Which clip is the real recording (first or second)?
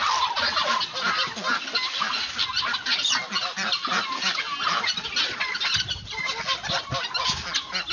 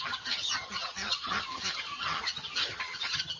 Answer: first